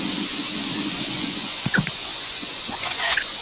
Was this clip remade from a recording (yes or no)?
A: yes